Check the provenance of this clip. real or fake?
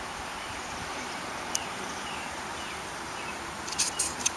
fake